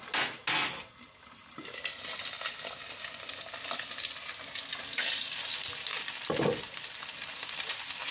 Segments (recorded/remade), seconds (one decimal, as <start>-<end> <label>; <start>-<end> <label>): 0.0-8.1 recorded